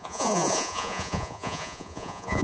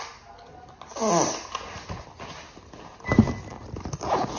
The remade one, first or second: first